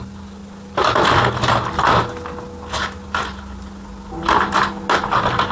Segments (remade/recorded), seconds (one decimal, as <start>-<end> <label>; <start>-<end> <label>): 0.0-5.5 recorded